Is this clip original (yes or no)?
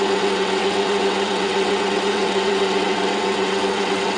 no